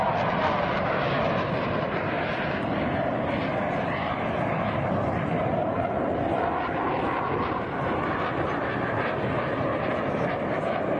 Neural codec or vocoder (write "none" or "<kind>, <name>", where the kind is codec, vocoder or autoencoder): none